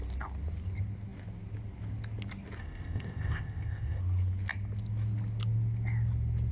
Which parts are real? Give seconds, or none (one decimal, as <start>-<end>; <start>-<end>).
0.0-2.6; 4.0-6.5